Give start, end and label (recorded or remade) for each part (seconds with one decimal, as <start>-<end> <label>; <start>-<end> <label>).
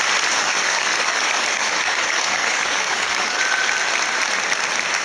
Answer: 0.0-0.4 recorded; 0.4-3.4 remade; 3.4-5.0 recorded